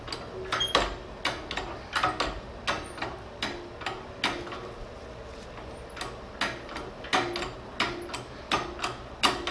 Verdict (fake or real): real